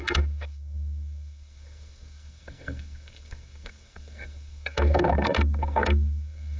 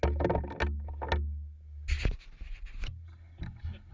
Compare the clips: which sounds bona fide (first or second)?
second